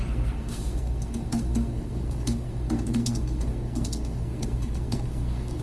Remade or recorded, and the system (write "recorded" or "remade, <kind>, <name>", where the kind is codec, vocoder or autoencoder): remade, codec, SNAC